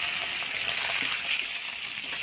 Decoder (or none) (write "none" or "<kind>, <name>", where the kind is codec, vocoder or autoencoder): none